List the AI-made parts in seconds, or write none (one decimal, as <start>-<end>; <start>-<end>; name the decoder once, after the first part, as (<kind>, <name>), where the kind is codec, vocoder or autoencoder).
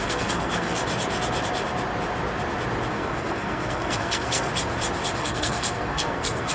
0.0-0.8 (codec, SNAC); 2.9-4.5; 5.2-6.5